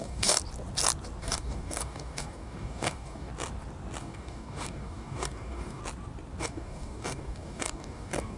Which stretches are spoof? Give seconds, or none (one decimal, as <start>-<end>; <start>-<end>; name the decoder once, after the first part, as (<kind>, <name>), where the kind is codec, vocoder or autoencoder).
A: 0.0-0.4 (codec, DAC); 1.2-3.3; 4.0-5.8; 6.4-8.4